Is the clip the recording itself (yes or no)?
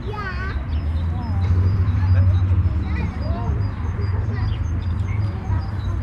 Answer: no